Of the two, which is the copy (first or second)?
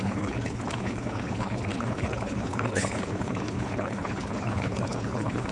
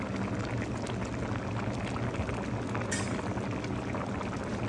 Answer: first